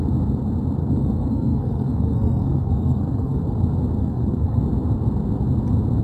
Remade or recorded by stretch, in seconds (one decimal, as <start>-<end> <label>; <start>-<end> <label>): 0.0-0.8 recorded; 0.8-3.4 remade; 3.4-4.0 recorded; 4.0-4.6 remade; 4.6-6.0 recorded